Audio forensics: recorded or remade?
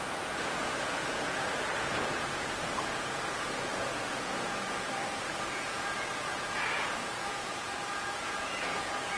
remade